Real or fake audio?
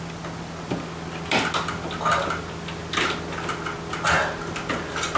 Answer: real